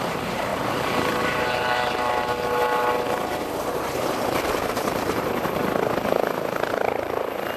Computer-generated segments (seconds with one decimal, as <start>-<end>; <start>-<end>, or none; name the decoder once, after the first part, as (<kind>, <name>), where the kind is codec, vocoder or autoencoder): 0.0-0.5 (vocoder, BigVGAN v2); 1.2-2.1; 3.7-5.6; 6.7-7.6